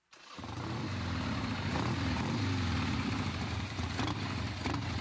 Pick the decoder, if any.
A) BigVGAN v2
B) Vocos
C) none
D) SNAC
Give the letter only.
A